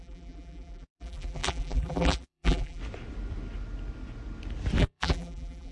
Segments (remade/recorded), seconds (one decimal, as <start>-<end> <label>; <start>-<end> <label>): 0.0-2.8 remade; 2.8-4.8 recorded; 4.8-5.7 remade